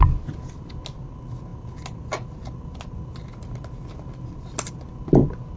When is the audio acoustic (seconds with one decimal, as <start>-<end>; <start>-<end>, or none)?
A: 0.0-5.6